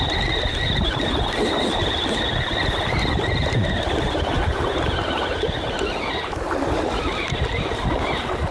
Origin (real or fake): real